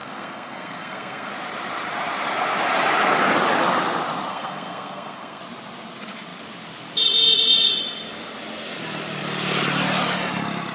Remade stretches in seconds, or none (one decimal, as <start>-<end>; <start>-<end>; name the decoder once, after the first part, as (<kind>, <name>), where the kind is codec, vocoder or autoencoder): 0.0-1.3 (codec, SNAC); 4.3-5.4